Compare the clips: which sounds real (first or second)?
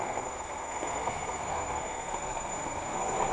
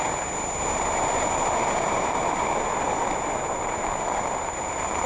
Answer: second